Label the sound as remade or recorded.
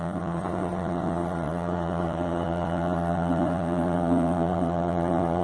remade